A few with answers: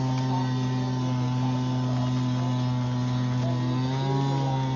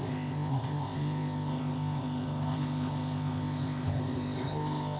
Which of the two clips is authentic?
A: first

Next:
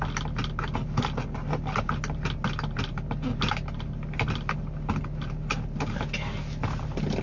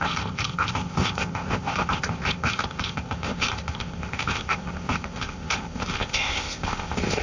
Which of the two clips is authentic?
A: first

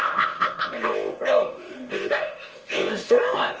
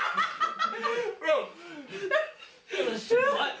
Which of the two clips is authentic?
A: second